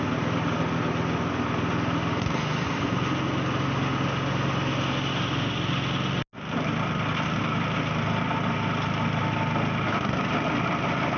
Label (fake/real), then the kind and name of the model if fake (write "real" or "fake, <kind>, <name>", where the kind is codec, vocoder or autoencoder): real